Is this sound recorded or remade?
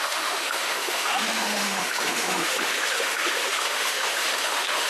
remade